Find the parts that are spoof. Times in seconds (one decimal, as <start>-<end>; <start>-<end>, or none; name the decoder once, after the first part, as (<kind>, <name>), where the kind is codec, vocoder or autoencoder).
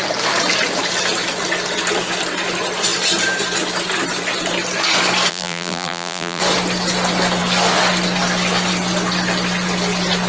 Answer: 5.3-6.4 (vocoder, BigVGAN v2)